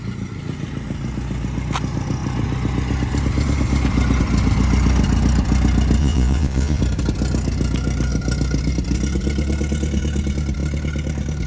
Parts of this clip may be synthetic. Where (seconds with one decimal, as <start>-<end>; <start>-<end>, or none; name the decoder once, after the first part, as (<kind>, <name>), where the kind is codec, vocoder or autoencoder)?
6.0-6.8 (vocoder, Vocos)